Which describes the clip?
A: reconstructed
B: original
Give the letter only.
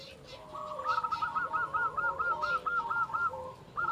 B